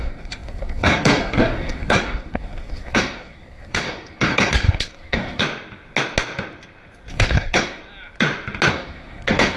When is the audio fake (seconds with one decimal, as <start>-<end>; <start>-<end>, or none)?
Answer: 0.0-5.4; 7.1-7.8; 8.7-9.6